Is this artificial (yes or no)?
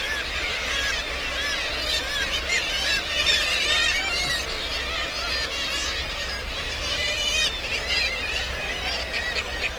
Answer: no